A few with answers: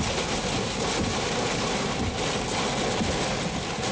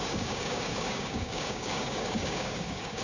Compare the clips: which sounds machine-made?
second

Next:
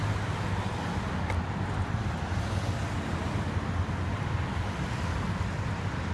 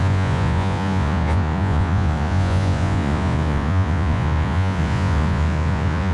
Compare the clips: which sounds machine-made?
second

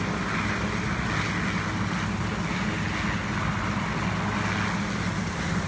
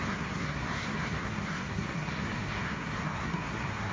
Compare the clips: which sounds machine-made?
second